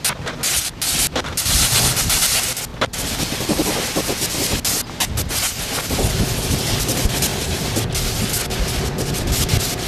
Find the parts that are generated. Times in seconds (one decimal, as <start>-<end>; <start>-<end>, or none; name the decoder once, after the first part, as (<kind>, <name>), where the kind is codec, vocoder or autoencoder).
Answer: none

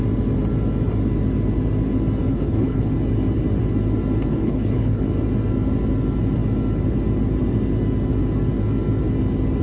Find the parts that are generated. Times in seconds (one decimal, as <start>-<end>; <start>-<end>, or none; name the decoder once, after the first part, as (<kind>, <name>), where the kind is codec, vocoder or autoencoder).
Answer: 2.3-2.9 (codec, HILCodec); 4.3-5.0

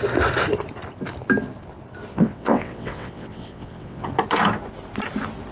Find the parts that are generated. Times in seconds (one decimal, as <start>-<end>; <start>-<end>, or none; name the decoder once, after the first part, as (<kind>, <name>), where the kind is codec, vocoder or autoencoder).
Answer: 2.1-4.1 (vocoder, WaveNeXt)

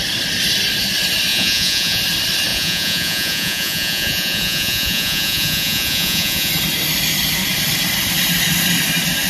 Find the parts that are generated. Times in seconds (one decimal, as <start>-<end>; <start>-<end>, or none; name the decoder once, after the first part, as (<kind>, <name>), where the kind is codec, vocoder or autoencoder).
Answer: 1.3-2.0 (vocoder, Vocos); 2.5-6.5

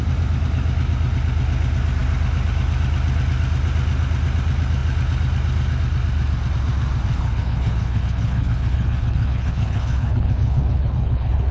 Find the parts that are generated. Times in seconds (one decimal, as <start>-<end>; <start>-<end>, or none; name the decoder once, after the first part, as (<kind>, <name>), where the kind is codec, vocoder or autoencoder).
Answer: 7.1-11.5 (codec, HILCodec)

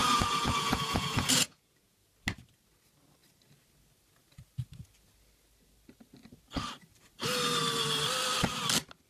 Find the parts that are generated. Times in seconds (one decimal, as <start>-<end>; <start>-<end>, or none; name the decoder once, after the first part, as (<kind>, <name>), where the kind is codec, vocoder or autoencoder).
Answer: 0.0-2.1 (vocoder, Vocos)